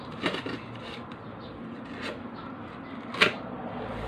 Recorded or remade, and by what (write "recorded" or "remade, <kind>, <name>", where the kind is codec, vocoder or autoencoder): recorded